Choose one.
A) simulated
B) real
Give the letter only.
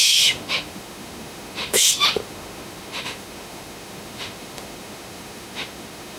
A